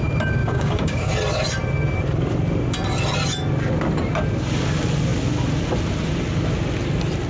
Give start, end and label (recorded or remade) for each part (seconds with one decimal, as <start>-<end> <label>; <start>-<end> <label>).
0.0-0.4 recorded; 0.4-1.1 remade; 1.1-7.3 recorded